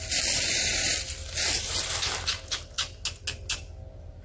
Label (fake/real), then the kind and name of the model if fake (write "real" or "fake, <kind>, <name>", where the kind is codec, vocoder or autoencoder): real